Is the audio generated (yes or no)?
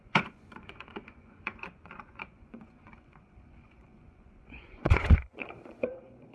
yes